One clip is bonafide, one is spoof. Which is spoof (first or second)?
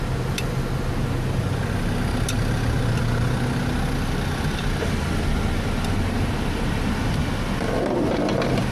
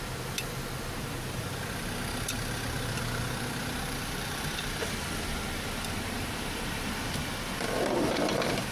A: second